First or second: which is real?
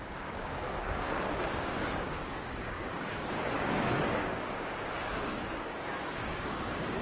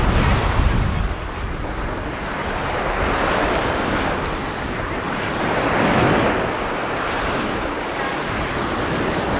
second